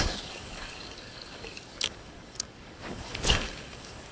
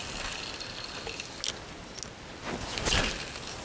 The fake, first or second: first